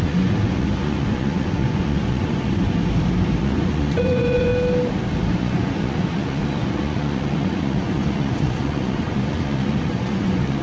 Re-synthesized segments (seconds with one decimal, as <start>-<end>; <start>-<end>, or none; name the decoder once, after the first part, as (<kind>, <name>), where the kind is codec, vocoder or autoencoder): 0.0-2.8 (vocoder, Vocos); 3.4-4.5; 5.4-10.6